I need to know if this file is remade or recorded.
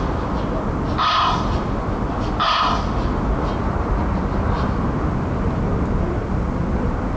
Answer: recorded